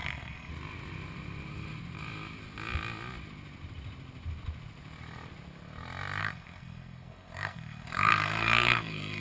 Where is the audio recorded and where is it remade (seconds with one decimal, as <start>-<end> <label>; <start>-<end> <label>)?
0.0-0.5 remade; 0.5-6.2 recorded; 6.2-9.2 remade